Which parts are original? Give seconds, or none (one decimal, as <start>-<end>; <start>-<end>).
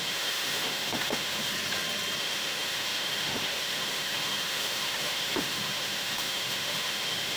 1.5-2.2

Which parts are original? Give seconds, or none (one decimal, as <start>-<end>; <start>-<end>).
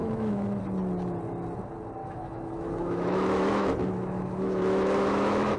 0.6-2.0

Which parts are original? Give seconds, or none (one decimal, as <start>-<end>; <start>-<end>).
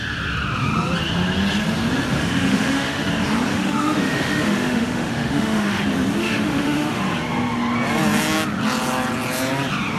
0.0-2.2; 3.1-3.5; 5.8-6.2; 7.0-10.0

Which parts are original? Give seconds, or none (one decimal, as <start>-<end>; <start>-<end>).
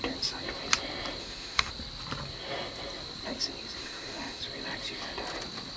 0.0-1.2; 1.7-3.8; 4.4-5.8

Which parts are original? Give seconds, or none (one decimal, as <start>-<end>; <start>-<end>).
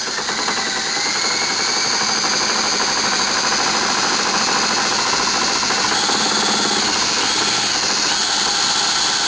0.0-9.3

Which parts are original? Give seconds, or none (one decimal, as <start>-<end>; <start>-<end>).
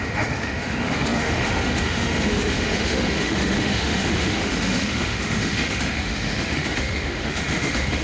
none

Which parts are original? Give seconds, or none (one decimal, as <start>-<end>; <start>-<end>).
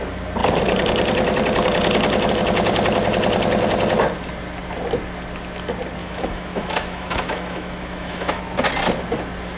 0.0-6.0; 8.4-9.6